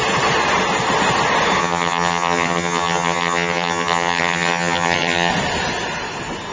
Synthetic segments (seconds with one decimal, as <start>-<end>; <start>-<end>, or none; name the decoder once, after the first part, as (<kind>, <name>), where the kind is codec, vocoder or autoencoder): 1.6-5.3 (vocoder, HiFi-GAN)